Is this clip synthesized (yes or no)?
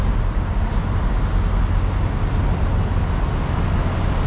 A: no